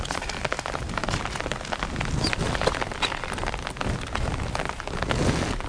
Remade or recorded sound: recorded